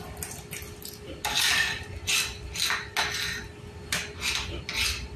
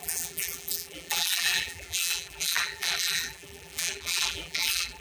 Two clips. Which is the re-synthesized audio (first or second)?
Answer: second